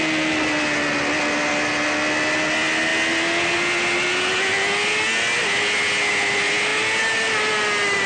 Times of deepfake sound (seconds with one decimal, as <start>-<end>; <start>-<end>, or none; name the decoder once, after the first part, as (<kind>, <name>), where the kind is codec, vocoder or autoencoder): none